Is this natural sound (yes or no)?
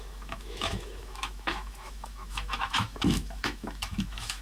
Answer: no